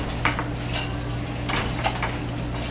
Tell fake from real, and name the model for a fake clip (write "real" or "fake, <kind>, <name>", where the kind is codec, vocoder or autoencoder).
real